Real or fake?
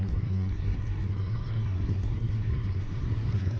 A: fake